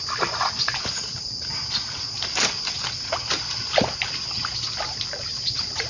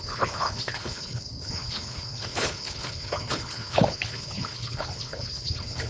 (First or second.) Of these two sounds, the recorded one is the first